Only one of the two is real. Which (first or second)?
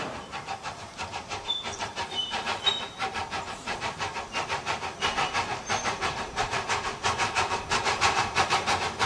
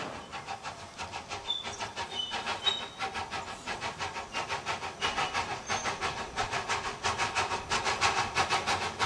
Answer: second